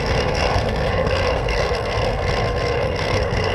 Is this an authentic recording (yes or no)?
no